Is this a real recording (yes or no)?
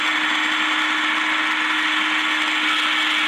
yes